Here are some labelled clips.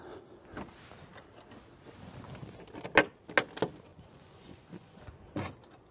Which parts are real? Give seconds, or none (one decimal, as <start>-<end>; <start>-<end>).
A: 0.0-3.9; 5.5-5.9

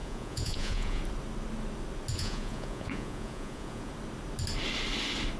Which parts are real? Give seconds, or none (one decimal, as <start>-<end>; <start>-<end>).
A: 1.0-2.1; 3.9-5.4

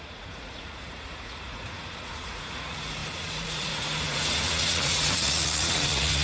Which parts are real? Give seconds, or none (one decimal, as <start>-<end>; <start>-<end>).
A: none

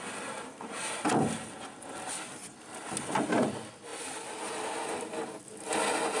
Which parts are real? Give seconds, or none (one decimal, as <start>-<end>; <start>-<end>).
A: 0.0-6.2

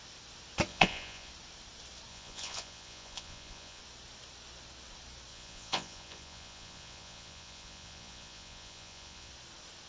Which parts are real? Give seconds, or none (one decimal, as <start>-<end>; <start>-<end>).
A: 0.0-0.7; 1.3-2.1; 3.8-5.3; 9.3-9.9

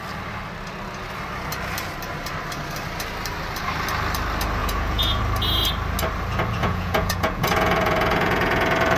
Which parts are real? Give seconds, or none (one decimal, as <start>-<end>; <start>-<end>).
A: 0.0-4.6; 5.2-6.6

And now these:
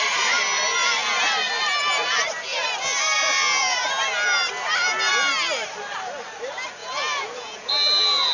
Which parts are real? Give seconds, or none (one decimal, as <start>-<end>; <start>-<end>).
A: 0.0-6.8; 7.7-8.3

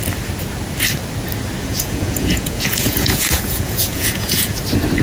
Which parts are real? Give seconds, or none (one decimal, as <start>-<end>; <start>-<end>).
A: 0.0-1.6; 4.6-5.0